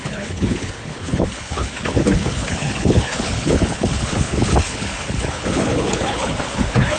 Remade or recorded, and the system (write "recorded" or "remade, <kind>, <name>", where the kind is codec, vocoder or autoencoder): remade, codec, HILCodec